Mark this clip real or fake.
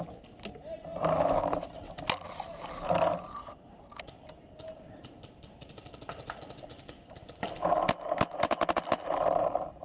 real